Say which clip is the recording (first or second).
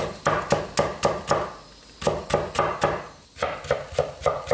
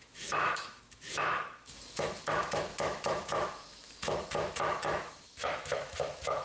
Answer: first